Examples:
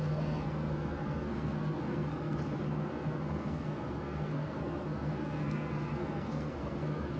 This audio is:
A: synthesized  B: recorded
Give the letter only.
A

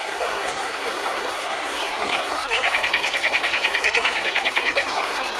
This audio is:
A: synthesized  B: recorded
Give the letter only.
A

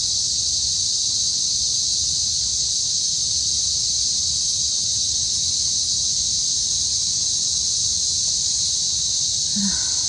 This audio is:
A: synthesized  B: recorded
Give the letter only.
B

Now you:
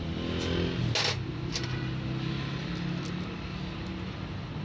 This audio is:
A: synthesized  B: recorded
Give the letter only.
B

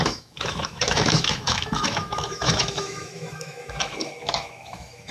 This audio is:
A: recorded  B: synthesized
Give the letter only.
B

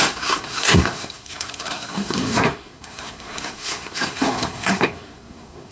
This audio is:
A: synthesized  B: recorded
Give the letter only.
A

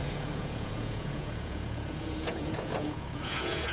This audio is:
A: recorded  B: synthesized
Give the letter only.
B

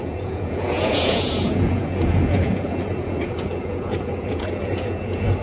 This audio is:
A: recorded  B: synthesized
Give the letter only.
B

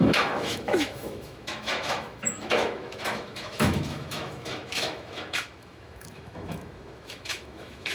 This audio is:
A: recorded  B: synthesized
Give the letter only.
B